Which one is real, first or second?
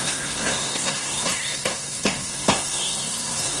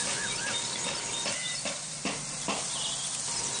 second